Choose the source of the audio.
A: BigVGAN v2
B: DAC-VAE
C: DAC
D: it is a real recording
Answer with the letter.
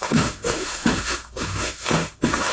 B